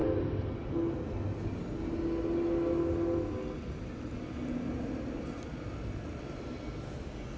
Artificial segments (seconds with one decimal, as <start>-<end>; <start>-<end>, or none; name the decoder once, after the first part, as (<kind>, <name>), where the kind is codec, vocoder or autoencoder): none